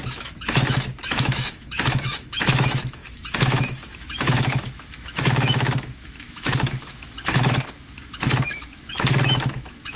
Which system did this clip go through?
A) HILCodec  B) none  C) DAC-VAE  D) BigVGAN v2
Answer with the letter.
C